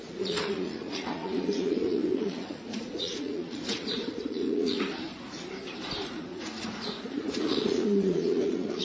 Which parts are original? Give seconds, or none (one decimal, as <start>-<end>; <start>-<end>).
5.1-6.1

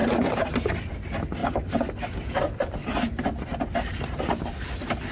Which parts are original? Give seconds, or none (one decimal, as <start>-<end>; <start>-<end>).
0.5-5.1

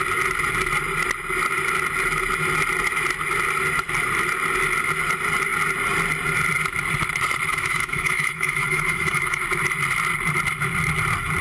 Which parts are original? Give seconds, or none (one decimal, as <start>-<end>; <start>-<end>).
0.0-7.5; 9.4-11.4

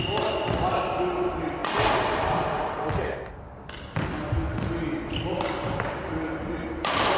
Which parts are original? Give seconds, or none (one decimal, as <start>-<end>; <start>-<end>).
0.0-7.2

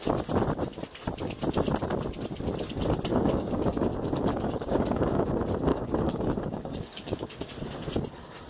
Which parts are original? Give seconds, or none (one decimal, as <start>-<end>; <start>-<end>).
0.0-3.1; 3.9-4.3; 5.2-5.7; 7.5-8.5